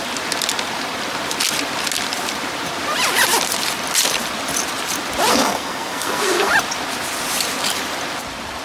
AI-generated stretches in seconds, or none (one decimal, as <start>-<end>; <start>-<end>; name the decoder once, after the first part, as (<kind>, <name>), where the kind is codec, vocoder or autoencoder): 5.3-6.5 (codec, SNAC)